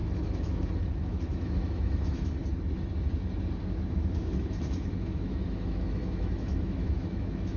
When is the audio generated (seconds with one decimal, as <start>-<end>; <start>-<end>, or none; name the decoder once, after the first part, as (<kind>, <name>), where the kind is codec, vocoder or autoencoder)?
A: 0.0-2.4 (autoencoder, DAC-VAE); 3.6-7.6